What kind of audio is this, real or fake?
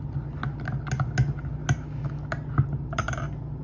real